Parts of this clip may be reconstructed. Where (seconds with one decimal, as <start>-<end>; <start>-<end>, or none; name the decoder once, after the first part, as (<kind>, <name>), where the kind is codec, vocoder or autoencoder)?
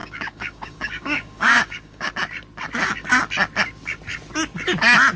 0.0-2.1 (codec, DAC)